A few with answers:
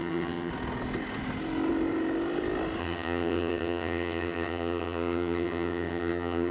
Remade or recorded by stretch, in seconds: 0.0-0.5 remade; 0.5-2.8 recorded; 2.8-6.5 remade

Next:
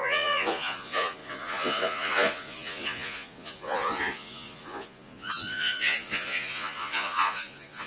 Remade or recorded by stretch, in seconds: 0.0-7.9 remade

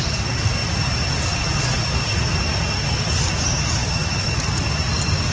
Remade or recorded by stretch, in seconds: 0.0-3.8 recorded; 3.8-4.4 remade; 4.4-5.3 recorded